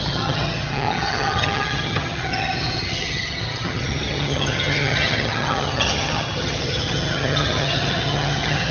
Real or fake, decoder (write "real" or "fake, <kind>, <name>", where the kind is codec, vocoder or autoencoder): fake, vocoder, HiFi-GAN